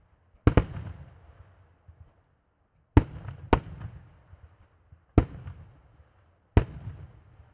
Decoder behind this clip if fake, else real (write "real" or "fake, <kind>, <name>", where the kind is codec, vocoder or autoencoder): real